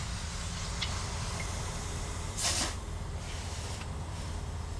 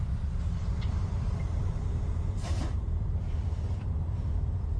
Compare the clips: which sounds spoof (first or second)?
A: second